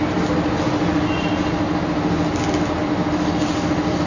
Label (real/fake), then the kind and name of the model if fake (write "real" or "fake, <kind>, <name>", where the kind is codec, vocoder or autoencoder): real